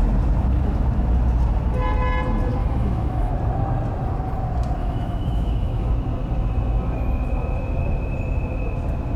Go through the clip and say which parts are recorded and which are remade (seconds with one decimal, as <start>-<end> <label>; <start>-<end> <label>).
0.0-2.6 recorded; 2.6-3.3 remade; 3.3-4.8 recorded; 4.8-5.9 remade; 5.9-9.2 recorded